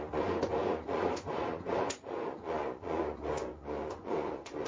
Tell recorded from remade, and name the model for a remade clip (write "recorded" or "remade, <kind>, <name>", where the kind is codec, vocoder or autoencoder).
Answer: remade, vocoder, Vocos